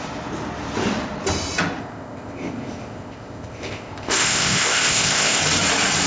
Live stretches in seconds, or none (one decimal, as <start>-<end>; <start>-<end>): 0.0-1.8; 5.4-6.1